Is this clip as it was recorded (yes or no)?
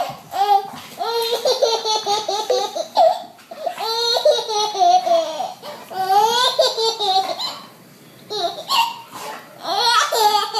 yes